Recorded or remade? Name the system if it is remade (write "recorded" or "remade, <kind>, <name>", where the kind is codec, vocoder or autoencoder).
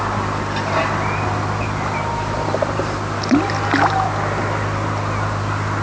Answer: recorded